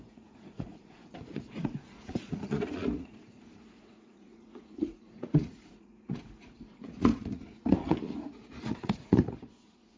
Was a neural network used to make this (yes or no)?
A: yes